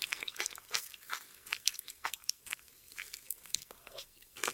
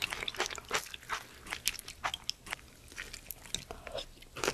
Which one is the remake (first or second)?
first